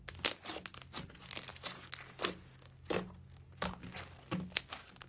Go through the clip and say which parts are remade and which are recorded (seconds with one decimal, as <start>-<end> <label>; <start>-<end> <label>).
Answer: 0.0-5.1 recorded